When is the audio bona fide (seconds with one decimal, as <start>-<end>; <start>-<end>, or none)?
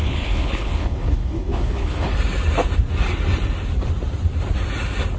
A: 2.1-5.2